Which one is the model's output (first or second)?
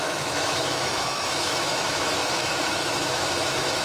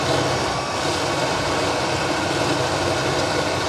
first